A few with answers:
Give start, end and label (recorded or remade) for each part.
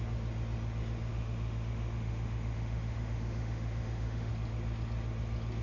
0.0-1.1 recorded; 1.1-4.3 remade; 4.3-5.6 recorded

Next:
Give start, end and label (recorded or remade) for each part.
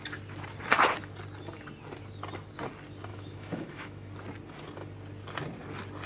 0.0-3.1 recorded; 3.1-4.1 remade; 4.1-6.1 recorded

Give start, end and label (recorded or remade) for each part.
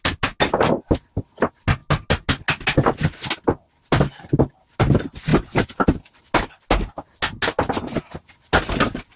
0.0-9.2 recorded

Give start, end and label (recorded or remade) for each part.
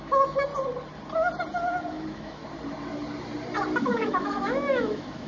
0.0-0.5 remade; 0.5-1.9 recorded; 1.9-2.4 remade; 2.4-3.8 recorded; 3.8-5.3 remade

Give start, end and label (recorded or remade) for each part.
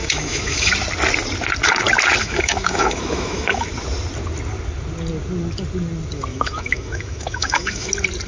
0.0-0.7 remade; 0.7-2.2 recorded; 2.2-3.7 remade; 3.7-6.3 recorded; 6.3-7.9 remade; 7.9-8.3 recorded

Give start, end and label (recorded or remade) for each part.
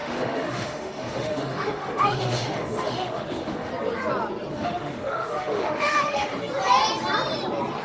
0.0-3.7 remade; 3.7-4.5 recorded; 4.5-6.3 remade; 6.3-7.8 recorded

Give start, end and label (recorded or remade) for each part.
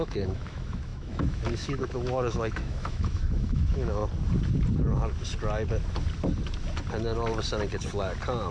0.0-4.0 remade; 4.0-8.5 recorded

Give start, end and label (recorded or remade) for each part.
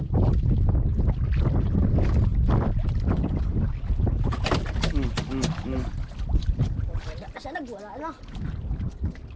0.0-9.4 recorded